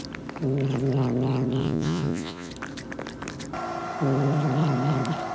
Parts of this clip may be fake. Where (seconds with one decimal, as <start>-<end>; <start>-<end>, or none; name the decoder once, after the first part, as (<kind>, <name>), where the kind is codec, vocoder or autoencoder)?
1.6-2.5 (vocoder, Vocos)